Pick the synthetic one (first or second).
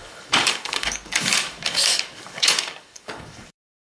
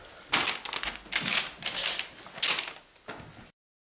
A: first